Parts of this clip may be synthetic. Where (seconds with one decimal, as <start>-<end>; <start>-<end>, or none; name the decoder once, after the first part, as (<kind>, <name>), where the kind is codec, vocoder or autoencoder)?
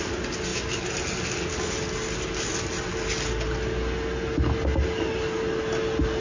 none